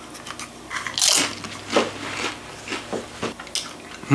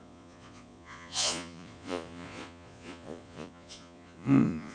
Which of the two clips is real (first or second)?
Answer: first